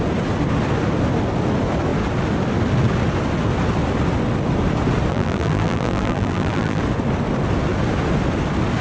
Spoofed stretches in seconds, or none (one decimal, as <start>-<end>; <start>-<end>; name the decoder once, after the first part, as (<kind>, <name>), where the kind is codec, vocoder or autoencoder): 5.1-6.8 (vocoder, BigVGAN v2)